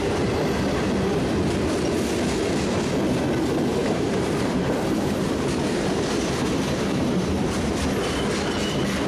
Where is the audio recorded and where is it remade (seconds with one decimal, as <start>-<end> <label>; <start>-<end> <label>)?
0.0-3.8 recorded; 3.8-7.7 remade; 7.7-9.1 recorded